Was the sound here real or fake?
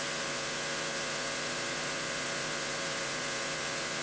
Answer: fake